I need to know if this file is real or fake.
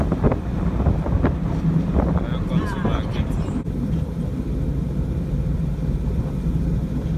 real